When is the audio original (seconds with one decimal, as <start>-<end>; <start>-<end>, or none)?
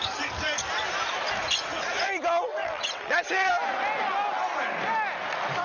0.0-2.5; 3.5-5.6